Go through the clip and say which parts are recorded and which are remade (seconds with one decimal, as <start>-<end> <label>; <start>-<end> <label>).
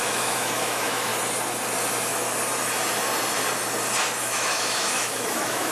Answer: 0.0-1.1 remade; 1.1-4.2 recorded; 4.2-5.7 remade